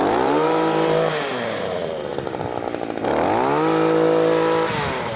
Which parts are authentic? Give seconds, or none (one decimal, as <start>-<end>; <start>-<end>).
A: 2.1-5.2